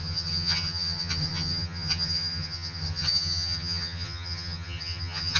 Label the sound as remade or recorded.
remade